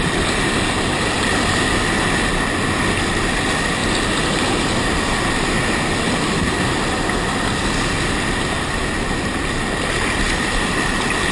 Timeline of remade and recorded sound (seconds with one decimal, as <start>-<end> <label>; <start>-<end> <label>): 0.0-11.3 recorded